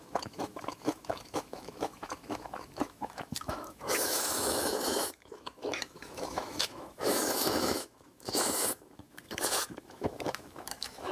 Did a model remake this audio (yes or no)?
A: yes